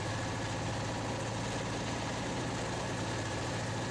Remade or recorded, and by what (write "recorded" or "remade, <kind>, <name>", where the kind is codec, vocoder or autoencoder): recorded